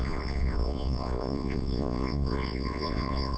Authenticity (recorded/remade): remade